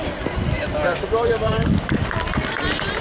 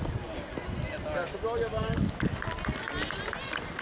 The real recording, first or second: second